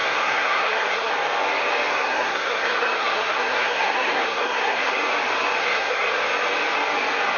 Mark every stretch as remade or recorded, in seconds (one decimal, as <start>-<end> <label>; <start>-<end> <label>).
0.0-1.1 remade; 1.1-1.9 recorded; 1.9-4.9 remade; 4.9-5.6 recorded; 5.6-6.1 remade; 6.1-7.4 recorded